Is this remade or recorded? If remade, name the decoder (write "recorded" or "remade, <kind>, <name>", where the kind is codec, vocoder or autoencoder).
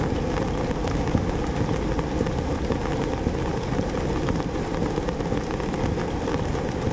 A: recorded